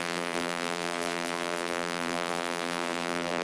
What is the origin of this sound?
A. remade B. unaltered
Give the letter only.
A